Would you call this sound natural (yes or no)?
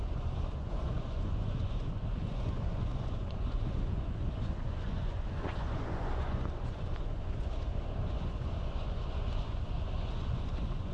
no